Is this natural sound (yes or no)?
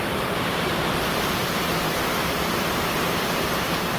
yes